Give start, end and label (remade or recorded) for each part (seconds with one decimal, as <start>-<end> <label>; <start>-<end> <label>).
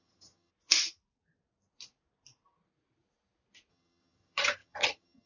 0.0-0.5 remade; 0.5-3.7 recorded; 3.7-5.3 remade